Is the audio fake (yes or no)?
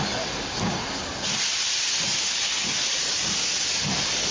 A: no